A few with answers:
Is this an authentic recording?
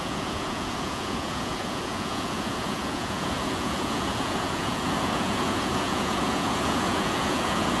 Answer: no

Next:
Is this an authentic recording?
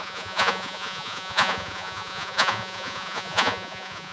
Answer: no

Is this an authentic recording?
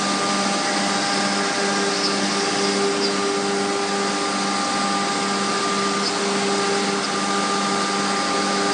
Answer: yes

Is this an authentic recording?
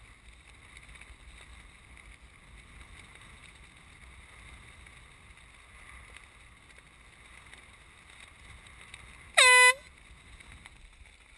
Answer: yes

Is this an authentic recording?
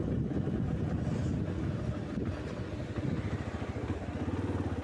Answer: yes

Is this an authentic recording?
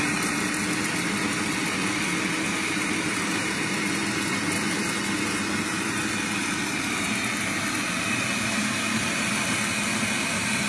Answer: yes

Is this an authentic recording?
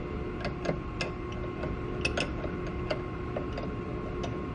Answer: yes